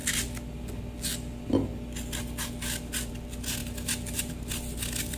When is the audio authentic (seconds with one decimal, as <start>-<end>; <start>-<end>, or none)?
0.0-5.2